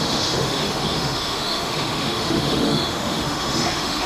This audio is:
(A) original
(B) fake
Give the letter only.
B